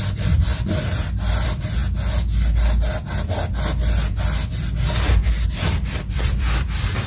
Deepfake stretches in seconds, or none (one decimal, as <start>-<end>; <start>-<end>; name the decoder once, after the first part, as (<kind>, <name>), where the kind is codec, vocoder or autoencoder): 0.0-1.8 (vocoder, BigVGAN v2); 6.1-7.1